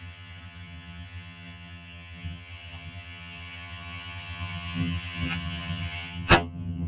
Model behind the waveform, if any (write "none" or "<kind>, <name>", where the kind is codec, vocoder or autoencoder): vocoder, HiFi-GAN